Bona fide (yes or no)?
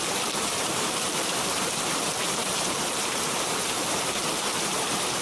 no